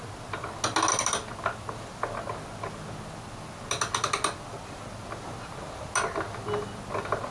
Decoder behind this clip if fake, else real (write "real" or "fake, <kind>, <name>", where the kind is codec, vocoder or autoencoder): real